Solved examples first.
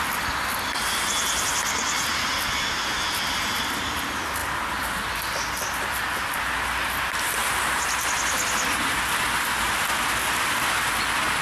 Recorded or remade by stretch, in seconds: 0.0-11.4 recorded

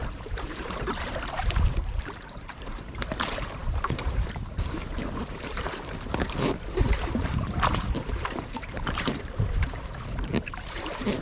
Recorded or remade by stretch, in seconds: 0.0-11.2 remade

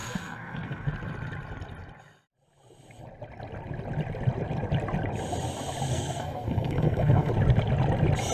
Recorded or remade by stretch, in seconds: 0.0-0.9 remade; 0.9-5.9 recorded; 5.9-7.3 remade; 7.3-8.3 recorded

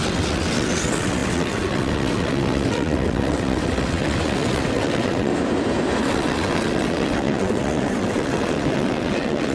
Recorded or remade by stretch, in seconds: 0.0-5.3 remade; 5.3-6.0 recorded; 6.0-9.5 remade